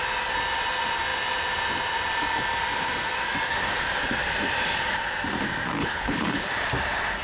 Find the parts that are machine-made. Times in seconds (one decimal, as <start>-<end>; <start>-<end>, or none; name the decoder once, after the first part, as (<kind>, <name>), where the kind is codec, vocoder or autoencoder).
5.8-6.5 (codec, HILCodec)

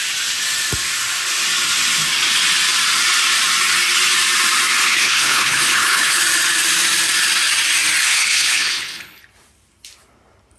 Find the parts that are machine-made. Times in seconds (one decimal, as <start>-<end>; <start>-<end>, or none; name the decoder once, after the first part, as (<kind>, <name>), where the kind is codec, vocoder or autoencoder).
4.8-6.2 (codec, HILCodec); 8.0-9.2

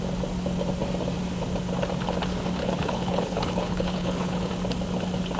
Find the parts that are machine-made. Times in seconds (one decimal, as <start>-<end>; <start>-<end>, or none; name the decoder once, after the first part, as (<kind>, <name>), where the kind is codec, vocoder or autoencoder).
2.6-4.5 (codec, HILCodec)